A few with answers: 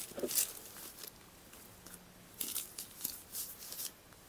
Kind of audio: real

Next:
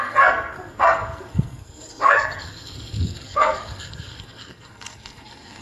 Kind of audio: fake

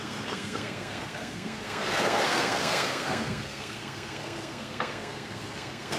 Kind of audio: fake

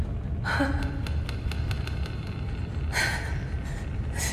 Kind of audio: real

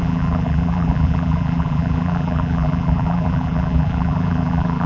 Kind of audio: fake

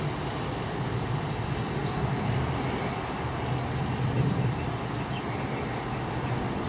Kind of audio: real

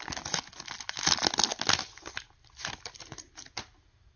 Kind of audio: real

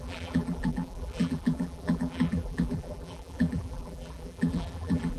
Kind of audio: fake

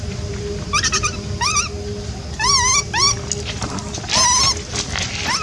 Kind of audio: real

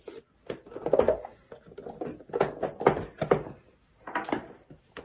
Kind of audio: real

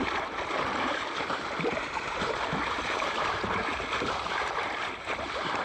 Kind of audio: fake